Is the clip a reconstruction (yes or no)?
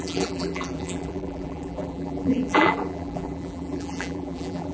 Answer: yes